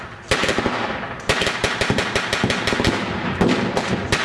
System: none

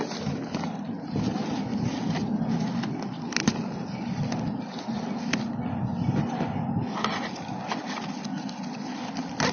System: none